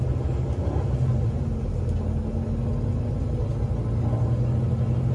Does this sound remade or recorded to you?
recorded